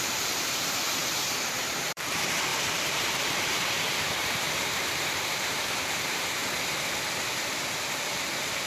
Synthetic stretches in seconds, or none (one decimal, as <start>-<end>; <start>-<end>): 0.0-1.0; 1.6-6.4; 7.3-8.7